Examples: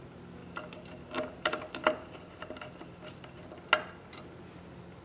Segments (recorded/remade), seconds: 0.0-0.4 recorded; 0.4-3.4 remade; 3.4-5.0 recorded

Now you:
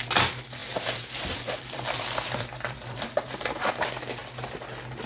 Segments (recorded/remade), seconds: 0.0-0.6 recorded; 0.6-3.7 remade; 3.7-5.1 recorded

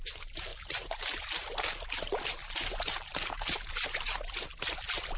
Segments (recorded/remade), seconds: 0.0-0.5 recorded; 0.5-1.2 remade; 1.2-2.4 recorded; 2.4-4.4 remade; 4.4-5.2 recorded